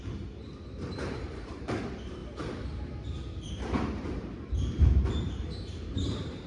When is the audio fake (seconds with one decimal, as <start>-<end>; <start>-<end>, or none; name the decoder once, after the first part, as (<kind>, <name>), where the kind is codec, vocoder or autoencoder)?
0.0-2.2 (vocoder, BigVGAN v2); 3.5-6.5